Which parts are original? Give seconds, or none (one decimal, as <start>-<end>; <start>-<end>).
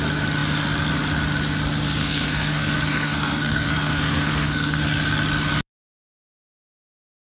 0.0-2.0; 4.8-7.2